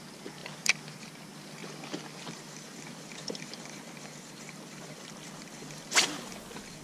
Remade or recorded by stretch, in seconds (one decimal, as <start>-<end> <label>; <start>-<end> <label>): 0.0-0.4 recorded; 0.4-1.0 remade; 1.0-6.8 recorded